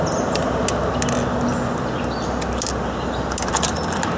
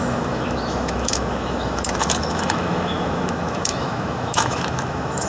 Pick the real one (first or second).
first